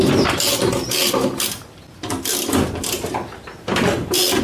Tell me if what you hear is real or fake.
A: real